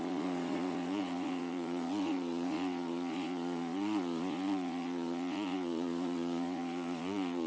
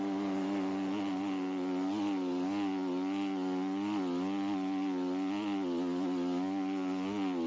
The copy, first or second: first